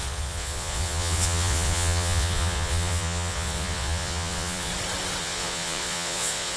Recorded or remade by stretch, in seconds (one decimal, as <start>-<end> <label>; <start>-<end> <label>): 0.0-4.7 remade; 4.7-5.2 recorded; 5.2-6.6 remade